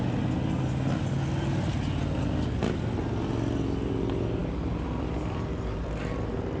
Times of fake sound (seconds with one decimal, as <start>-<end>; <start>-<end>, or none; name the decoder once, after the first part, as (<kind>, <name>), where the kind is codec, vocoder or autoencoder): none